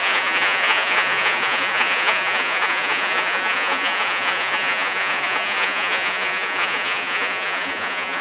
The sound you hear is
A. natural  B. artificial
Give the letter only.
B